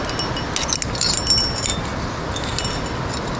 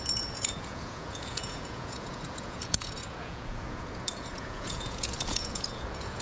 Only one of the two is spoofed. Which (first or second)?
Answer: second